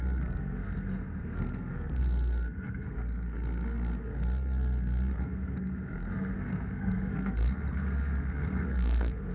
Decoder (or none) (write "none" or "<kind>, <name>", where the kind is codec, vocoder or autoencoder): codec, SNAC